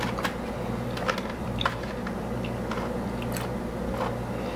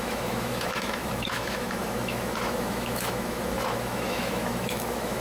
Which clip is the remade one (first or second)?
second